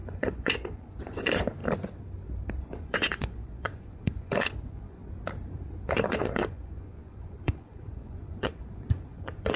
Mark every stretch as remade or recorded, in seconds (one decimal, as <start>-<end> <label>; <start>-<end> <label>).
0.0-1.6 remade; 1.6-2.6 recorded; 2.6-5.0 remade; 5.0-5.8 recorded; 5.8-9.6 remade